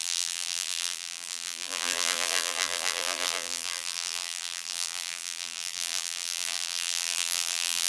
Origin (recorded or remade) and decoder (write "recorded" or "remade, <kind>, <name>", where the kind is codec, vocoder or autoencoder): remade, vocoder, BigVGAN v2